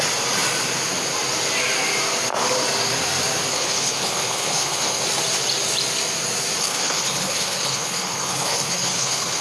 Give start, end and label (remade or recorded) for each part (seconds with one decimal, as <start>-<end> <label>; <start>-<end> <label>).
0.0-3.5 recorded; 3.5-5.0 remade; 5.0-6.6 recorded; 6.6-9.4 remade